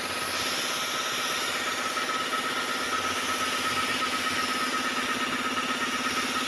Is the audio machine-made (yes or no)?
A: no